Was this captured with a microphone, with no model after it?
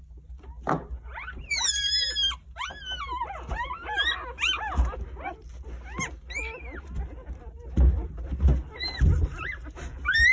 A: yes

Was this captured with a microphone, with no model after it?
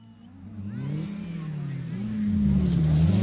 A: yes